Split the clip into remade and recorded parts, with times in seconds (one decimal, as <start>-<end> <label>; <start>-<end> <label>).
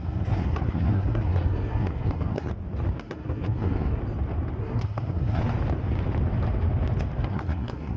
0.0-2.5 remade; 2.5-3.0 recorded; 3.0-4.0 remade; 4.0-4.6 recorded; 4.6-5.4 remade; 5.4-7.3 recorded; 7.3-8.0 remade